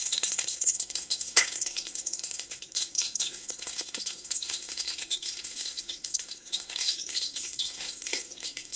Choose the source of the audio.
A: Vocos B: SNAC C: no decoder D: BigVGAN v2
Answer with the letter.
B